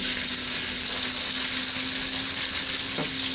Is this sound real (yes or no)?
yes